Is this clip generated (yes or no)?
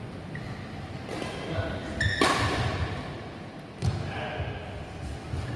no